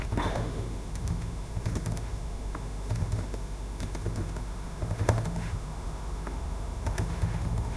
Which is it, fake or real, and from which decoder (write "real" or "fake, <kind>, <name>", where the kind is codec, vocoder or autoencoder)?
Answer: fake, autoencoder, DAC-VAE